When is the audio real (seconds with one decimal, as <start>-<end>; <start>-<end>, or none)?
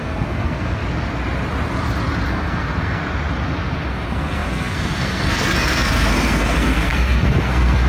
0.8-2.3; 3.0-3.9